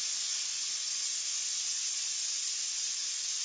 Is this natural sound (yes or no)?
yes